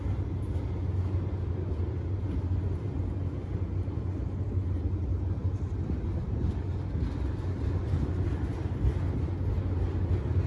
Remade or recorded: recorded